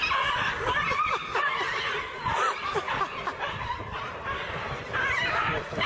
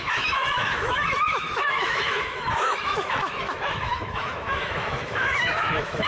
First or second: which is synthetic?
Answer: second